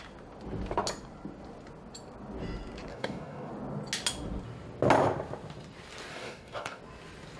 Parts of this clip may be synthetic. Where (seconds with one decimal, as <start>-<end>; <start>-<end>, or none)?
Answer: 2.9-3.5; 6.1-6.8